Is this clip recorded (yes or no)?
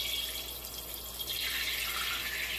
yes